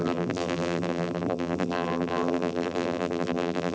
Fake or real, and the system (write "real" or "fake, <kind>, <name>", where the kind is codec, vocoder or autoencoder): fake, vocoder, BigVGAN v2